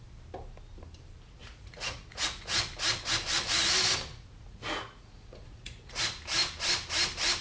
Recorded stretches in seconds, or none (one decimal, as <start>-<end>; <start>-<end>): 0.0-1.4; 2.6-4.1; 6.0-7.4